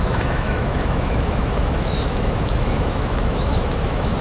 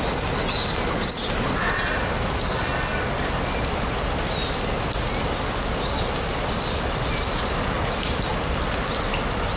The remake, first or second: first